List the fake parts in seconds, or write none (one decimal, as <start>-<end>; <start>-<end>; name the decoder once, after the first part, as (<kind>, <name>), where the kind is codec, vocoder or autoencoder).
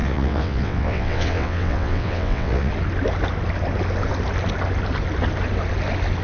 0.0-2.7 (vocoder, WaveNeXt)